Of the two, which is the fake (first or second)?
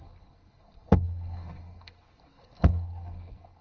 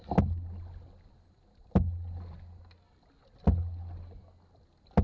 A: first